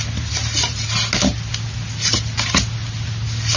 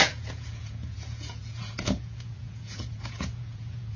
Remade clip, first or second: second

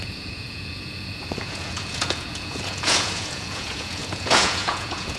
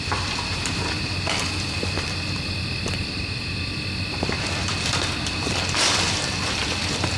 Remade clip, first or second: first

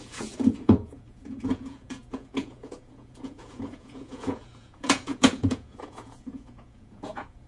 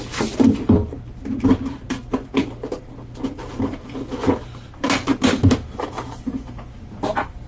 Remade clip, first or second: first